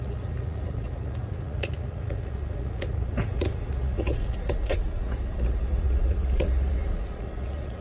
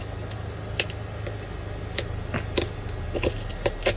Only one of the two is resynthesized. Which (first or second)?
first